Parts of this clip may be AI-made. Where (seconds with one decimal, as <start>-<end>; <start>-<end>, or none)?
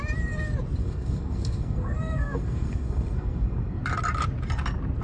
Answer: 0.8-3.8